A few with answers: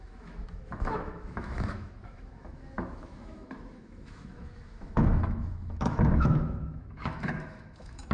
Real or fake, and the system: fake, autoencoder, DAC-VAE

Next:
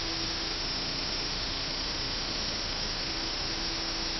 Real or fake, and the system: fake, autoencoder, DAC-VAE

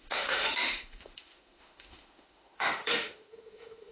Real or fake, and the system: fake, autoencoder, DAC-VAE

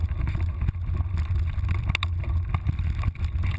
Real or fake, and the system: real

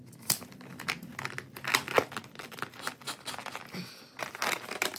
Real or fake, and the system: real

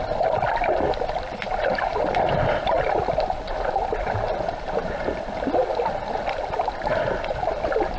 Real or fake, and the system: real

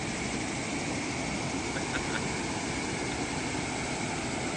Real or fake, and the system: real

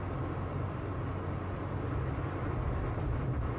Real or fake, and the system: real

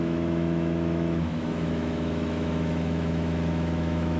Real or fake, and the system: fake, autoencoder, DAC-VAE